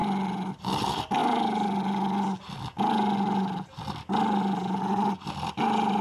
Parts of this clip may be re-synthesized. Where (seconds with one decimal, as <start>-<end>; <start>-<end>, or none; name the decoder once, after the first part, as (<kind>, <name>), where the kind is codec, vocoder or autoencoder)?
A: none